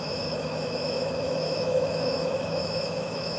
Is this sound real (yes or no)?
no